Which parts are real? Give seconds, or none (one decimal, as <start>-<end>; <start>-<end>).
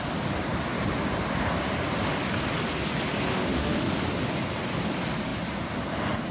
0.0-3.3; 3.9-6.3